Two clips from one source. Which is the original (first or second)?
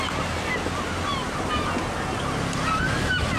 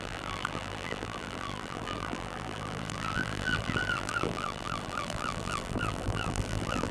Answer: first